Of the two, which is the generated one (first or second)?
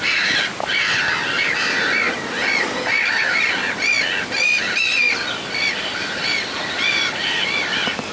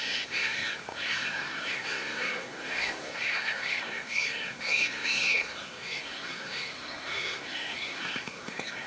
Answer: second